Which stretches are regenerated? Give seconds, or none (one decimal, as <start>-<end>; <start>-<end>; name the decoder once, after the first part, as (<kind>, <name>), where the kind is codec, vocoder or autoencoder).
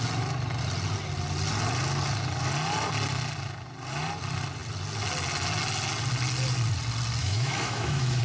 7.2-8.2 (autoencoder, DAC-VAE)